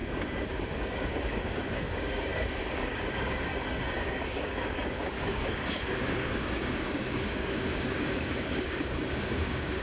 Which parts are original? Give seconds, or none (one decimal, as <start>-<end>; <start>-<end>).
3.5-4.0